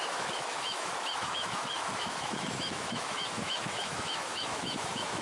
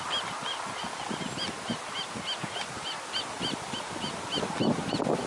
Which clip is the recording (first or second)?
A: second